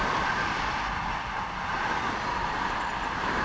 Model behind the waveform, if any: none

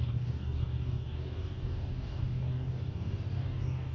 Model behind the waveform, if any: codec, DAC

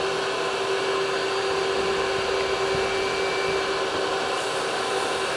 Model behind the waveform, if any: none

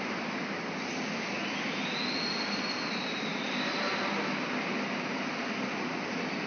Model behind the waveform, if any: none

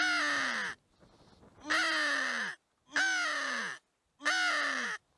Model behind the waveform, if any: none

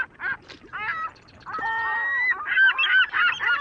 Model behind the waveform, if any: none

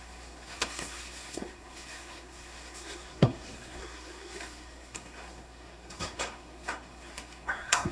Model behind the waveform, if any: codec, SNAC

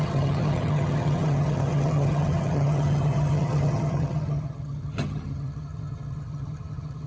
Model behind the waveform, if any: vocoder, HiFi-GAN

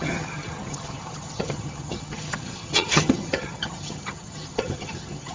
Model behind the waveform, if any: vocoder, HiFi-GAN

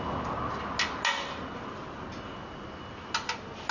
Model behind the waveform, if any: none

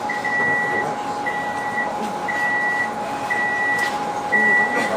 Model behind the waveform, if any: none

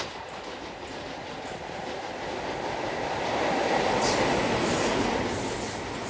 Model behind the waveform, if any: none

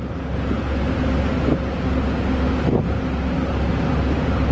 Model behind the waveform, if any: none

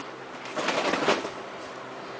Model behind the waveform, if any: none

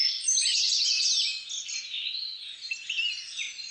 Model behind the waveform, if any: none